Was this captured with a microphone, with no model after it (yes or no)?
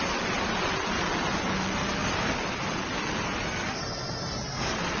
yes